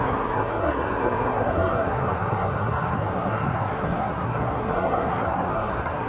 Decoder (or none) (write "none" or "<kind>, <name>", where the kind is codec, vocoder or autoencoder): codec, SNAC